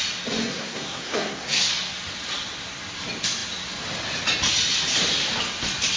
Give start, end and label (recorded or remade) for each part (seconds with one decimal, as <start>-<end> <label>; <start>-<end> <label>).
0.0-0.4 recorded; 0.4-1.7 remade; 1.7-6.0 recorded